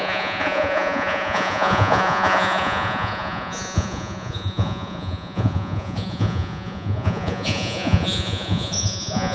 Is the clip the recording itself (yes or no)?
no